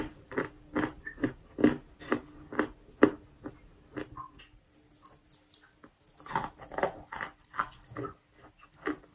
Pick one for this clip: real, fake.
real